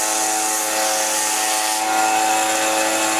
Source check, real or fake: real